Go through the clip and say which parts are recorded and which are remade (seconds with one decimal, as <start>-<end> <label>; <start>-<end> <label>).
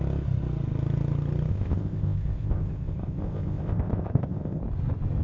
0.0-1.5 recorded; 1.5-4.6 remade; 4.6-5.2 recorded